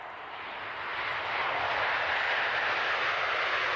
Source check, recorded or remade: recorded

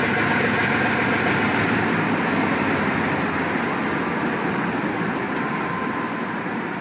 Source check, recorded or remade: recorded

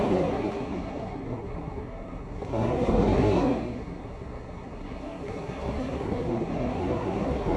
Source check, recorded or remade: remade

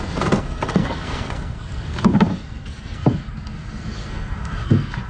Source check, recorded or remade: remade